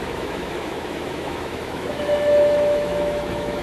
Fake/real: fake